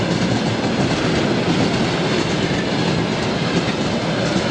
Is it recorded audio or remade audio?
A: recorded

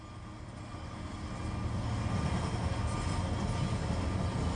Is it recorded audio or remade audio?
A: recorded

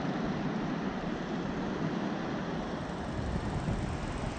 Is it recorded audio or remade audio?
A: recorded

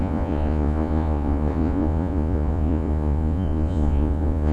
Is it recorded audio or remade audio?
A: remade